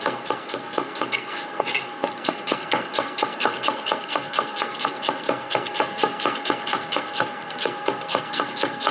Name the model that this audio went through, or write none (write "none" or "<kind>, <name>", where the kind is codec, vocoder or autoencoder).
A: codec, SNAC